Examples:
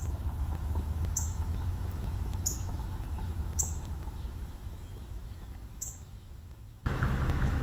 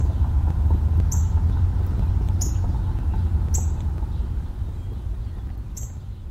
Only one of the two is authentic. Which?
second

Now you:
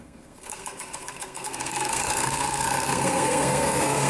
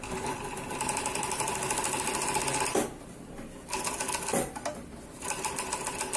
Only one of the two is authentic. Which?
second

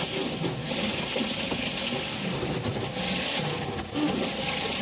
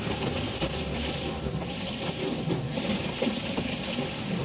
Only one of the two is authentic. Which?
first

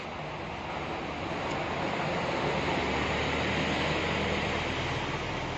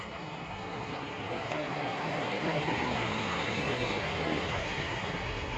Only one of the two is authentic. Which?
first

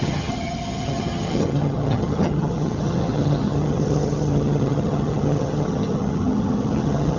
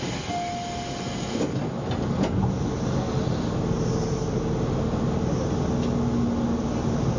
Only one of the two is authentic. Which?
second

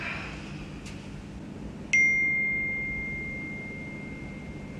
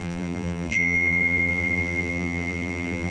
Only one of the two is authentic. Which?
first